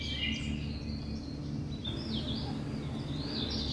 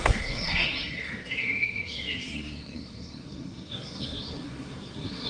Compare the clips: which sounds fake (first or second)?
second